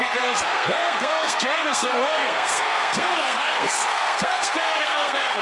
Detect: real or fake fake